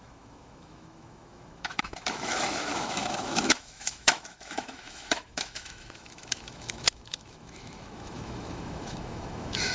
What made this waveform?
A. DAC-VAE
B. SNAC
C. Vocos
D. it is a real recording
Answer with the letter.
A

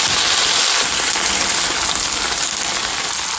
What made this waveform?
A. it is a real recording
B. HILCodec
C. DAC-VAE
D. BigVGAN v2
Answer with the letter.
A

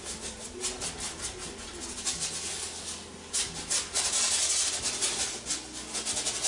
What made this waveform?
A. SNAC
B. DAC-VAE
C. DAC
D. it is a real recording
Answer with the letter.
D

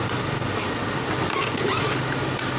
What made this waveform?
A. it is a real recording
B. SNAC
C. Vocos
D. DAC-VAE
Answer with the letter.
A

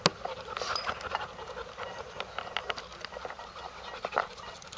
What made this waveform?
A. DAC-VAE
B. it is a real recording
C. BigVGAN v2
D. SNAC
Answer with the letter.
B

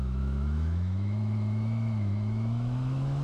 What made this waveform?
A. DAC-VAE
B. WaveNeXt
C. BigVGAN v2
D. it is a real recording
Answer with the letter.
A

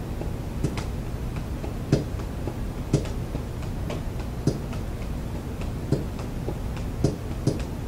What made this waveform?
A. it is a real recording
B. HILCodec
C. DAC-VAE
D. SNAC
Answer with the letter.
A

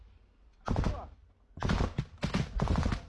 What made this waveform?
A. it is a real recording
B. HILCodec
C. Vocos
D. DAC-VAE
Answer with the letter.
A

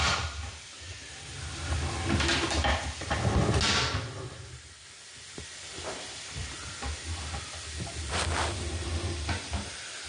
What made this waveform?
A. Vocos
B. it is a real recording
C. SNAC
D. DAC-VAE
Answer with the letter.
B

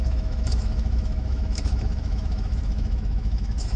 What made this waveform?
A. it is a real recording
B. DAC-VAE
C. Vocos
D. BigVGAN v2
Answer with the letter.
B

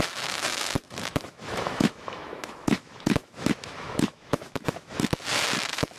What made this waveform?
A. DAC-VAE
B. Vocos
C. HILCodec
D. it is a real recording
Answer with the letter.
A